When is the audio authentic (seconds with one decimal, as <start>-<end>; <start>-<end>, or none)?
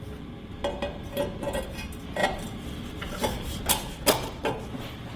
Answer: 0.0-2.2; 3.7-5.2